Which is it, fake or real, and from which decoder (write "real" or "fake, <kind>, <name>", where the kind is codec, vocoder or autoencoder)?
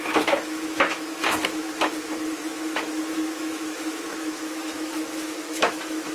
fake, autoencoder, DAC-VAE